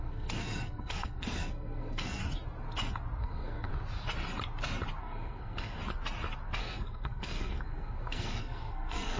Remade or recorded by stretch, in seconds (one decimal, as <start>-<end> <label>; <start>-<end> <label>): 0.0-2.2 remade; 2.2-3.2 recorded; 3.2-3.7 remade; 3.7-5.0 recorded; 5.0-5.8 remade; 5.8-6.6 recorded; 6.6-9.2 remade